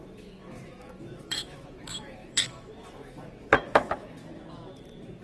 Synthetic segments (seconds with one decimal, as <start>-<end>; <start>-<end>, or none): 0.0-4.2